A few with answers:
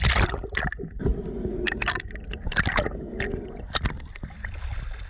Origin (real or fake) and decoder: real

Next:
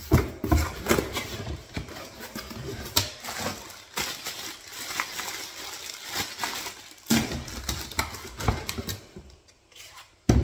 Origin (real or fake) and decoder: real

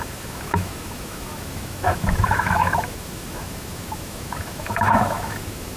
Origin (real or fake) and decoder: fake, autoencoder, DAC-VAE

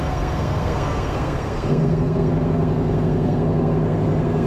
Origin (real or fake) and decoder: fake, codec, SNAC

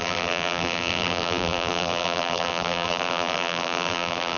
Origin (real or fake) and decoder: fake, vocoder, BigVGAN v2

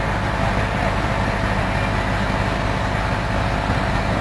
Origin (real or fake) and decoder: real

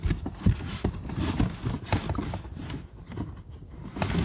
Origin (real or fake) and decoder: real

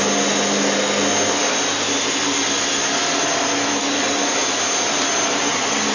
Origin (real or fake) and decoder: real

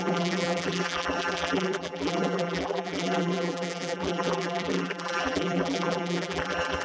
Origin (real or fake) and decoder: fake, vocoder, BigVGAN v2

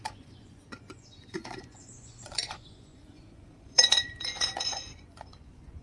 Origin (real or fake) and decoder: fake, vocoder, Vocos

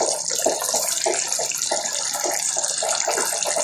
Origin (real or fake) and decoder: fake, vocoder, BigVGAN v2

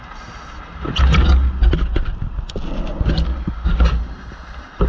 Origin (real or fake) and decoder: real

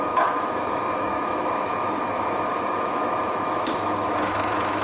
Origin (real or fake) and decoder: fake, autoencoder, DAC-VAE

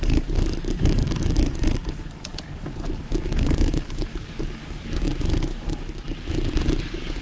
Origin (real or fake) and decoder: fake, codec, DAC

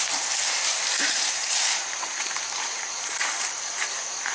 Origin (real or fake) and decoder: fake, vocoder, BigVGAN v2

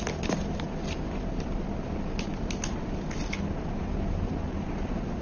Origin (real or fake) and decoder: real